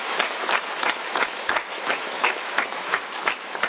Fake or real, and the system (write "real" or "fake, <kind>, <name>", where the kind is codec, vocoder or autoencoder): fake, autoencoder, DAC-VAE